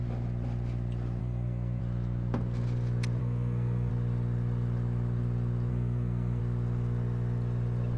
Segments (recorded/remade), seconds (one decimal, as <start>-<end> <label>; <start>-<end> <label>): 0.0-1.2 recorded; 1.2-1.8 remade; 1.8-3.2 recorded; 3.2-3.9 remade; 3.9-5.7 recorded; 5.7-6.4 remade; 6.4-8.0 recorded